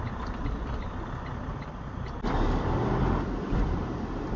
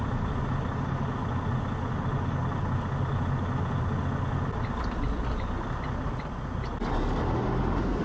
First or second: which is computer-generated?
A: first